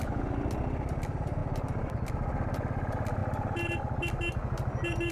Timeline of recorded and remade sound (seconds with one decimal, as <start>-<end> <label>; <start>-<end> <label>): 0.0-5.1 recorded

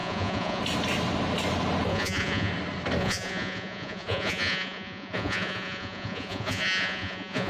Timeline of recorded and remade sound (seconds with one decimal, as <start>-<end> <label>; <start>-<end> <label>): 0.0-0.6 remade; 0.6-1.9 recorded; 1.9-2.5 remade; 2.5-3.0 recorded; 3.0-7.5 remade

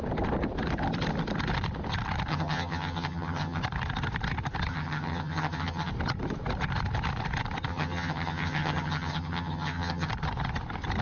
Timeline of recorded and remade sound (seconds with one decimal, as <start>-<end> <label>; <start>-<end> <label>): 0.0-2.3 recorded; 2.3-3.6 remade; 3.6-4.7 recorded; 4.7-5.9 remade; 5.9-7.7 recorded; 7.7-10.1 remade; 10.1-11.0 recorded